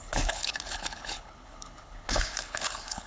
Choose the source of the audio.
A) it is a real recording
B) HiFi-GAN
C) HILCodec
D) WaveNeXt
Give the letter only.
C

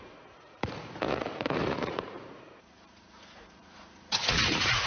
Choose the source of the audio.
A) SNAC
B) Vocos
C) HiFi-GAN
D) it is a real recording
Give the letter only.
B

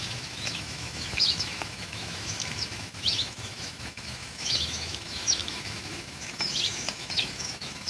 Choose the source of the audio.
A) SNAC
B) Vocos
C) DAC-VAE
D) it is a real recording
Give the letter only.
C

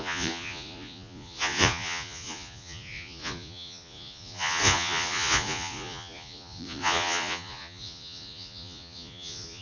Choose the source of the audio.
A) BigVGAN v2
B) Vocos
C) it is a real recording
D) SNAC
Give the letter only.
B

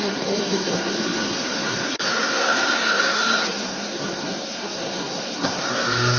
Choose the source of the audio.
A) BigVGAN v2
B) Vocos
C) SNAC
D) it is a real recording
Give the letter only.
C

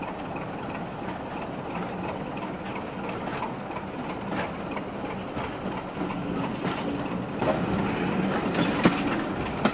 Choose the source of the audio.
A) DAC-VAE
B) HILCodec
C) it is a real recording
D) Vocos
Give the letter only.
C